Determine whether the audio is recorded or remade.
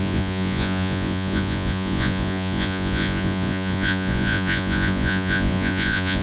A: remade